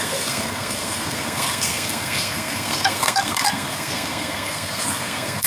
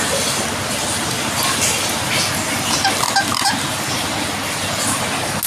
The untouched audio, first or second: second